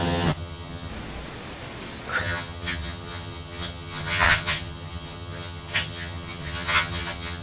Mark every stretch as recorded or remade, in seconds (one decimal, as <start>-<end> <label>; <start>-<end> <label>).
0.0-0.9 remade; 0.9-2.2 recorded; 2.2-7.4 remade